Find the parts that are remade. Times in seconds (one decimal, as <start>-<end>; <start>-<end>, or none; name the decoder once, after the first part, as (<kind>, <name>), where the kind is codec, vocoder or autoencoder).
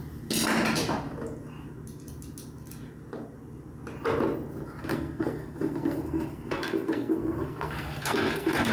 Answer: 4.8-8.7 (codec, SNAC)